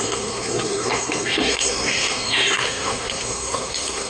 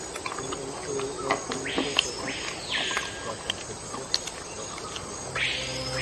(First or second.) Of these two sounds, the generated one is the first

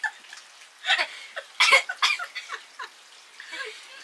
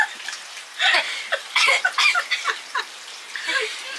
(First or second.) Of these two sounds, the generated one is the second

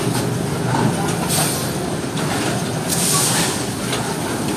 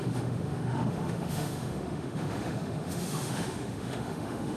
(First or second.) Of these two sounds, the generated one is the second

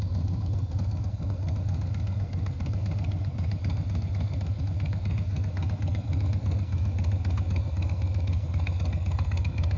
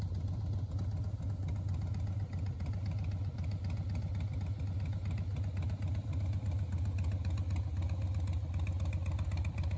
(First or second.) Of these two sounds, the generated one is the first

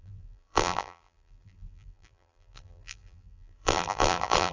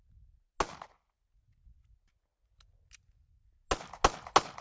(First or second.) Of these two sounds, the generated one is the first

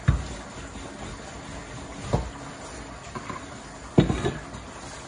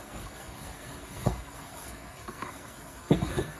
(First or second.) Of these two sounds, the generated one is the second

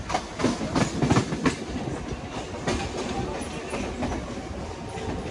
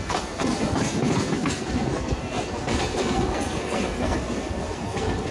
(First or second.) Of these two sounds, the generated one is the second